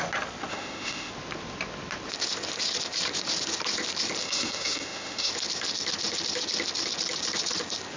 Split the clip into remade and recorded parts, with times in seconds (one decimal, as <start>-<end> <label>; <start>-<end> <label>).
0.0-0.5 recorded; 0.5-1.1 remade; 1.1-4.2 recorded; 4.2-5.3 remade; 5.3-8.0 recorded